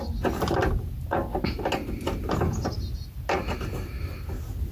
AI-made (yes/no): no